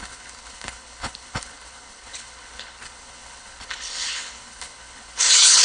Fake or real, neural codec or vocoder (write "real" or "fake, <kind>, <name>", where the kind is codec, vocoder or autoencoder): fake, codec, HILCodec